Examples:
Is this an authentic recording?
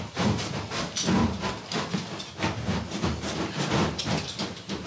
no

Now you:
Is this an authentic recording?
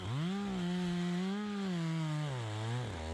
yes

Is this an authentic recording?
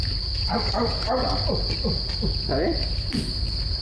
yes